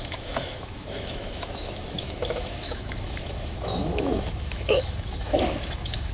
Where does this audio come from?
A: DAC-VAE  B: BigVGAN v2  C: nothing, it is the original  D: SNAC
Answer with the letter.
A